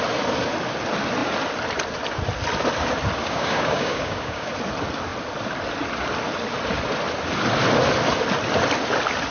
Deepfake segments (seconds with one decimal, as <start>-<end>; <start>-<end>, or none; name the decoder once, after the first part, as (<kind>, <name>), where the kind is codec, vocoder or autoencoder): 3.2-4.5 (codec, DAC)